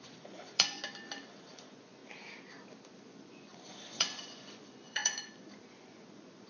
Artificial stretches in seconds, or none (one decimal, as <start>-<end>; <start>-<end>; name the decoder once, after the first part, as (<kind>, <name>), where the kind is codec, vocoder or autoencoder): 0.0-0.8 (vocoder, Vocos); 1.5-2.0; 3.0-6.5

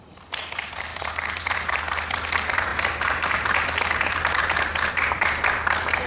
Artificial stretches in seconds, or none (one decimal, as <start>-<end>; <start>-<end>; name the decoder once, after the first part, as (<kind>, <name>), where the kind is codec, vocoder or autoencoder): 0.0-6.1 (vocoder, BigVGAN v2)

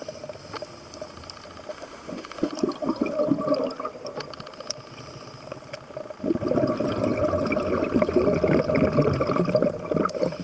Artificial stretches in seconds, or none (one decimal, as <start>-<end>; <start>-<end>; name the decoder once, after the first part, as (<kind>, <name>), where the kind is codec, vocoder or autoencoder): 1.7-2.5 (autoencoder, DAC-VAE)

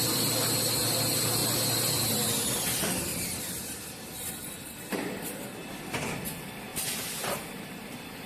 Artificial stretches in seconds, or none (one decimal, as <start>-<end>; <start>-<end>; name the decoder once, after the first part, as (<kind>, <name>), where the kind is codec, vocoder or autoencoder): 3.1-4.3 (vocoder, BigVGAN v2)